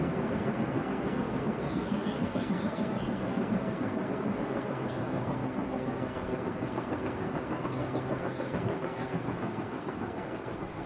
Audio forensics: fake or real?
fake